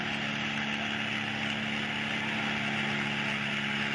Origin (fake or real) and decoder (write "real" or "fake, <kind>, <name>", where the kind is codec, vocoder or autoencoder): real